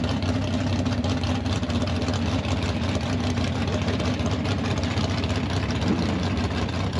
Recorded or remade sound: recorded